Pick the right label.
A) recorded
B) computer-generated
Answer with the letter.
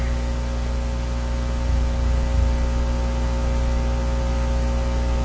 A